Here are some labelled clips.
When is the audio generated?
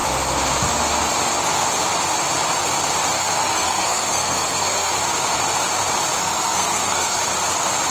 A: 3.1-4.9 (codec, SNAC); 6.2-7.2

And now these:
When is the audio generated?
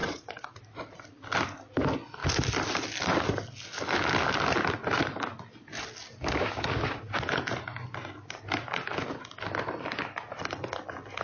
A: 0.0-0.6 (vocoder, WaveNeXt)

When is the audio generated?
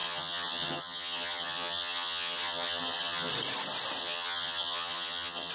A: 0.0-3.3 (vocoder, HiFi-GAN); 4.0-5.5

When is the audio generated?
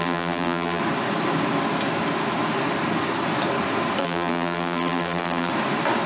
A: 0.0-0.8 (vocoder, BigVGAN v2); 4.0-5.5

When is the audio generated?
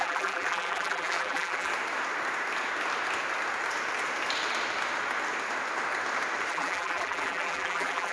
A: 0.0-1.7 (vocoder, BigVGAN v2); 6.5-8.1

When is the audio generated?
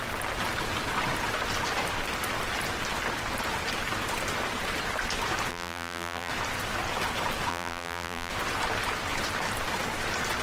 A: 5.5-6.3 (vocoder, BigVGAN v2); 7.5-8.3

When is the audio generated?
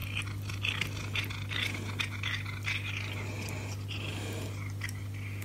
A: none